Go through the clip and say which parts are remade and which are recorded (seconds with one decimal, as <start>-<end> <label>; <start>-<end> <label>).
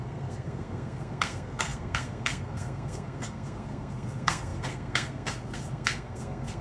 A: 0.0-6.6 remade